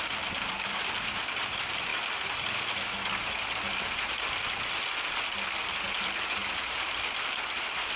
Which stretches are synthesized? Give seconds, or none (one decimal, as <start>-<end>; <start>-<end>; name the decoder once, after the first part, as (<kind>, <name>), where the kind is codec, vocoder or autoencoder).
0.0-1.9 (vocoder, BigVGAN v2); 5.8-8.0